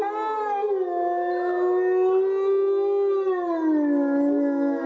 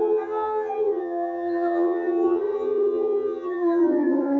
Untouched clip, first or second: first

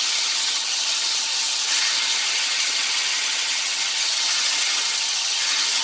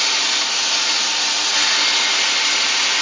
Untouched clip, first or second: second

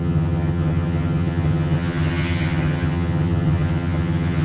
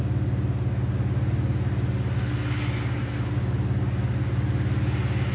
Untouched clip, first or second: second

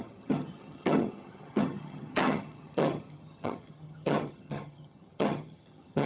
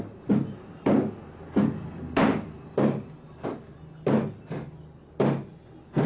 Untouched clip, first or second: second